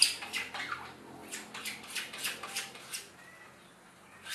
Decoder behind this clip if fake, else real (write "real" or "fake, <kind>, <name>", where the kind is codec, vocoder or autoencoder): real